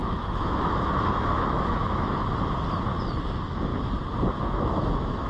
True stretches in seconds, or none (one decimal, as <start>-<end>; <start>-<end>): 2.2-3.3; 3.7-4.4